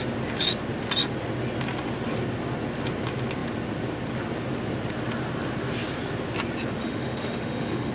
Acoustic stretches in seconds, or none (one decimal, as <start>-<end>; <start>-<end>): 0.0-6.8

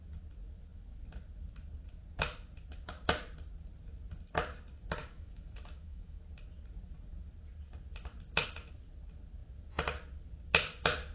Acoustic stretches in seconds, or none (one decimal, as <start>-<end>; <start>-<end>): 0.0-5.0; 6.2-11.1